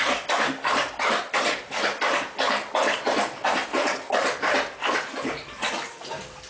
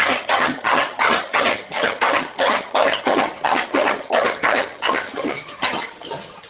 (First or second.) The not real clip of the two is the second